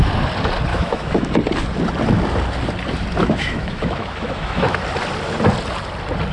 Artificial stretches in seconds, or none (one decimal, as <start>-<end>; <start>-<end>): 0.7-1.3; 3.2-4.8